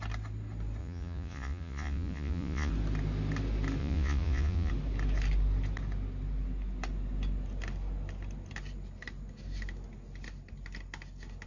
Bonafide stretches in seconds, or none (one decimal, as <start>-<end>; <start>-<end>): 0.0-0.8; 2.7-3.8; 4.7-11.5